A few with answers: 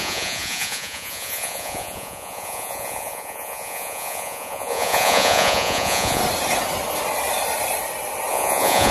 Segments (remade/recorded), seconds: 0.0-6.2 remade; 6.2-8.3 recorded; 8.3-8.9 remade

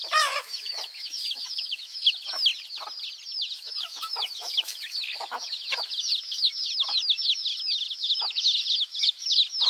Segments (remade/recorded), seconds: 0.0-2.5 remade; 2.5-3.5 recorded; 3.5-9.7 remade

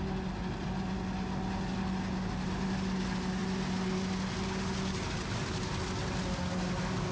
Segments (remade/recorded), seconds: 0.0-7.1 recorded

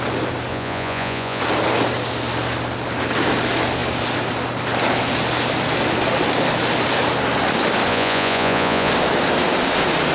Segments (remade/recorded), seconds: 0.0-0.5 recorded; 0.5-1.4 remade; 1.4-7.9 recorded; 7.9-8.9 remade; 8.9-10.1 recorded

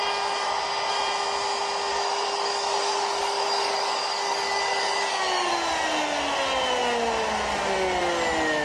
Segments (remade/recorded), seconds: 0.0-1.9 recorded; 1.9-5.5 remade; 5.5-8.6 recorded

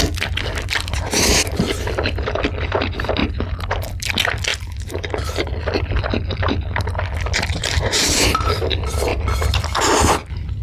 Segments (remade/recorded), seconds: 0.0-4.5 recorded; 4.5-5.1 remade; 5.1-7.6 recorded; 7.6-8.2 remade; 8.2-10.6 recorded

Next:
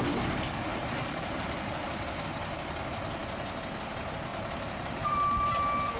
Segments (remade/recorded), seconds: 0.0-0.7 recorded; 0.7-1.9 remade; 1.9-4.3 recorded; 4.3-5.6 remade; 5.6-6.0 recorded